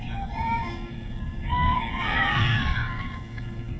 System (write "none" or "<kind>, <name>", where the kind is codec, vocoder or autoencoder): codec, SNAC